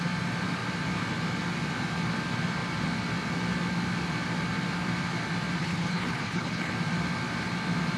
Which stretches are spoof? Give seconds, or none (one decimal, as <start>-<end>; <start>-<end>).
5.6-6.7